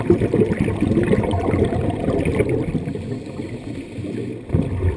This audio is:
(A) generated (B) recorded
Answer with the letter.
B